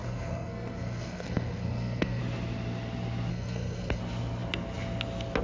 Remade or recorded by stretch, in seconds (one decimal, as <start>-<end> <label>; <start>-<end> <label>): 0.0-2.2 remade; 2.2-3.3 recorded; 3.3-4.0 remade; 4.0-5.4 recorded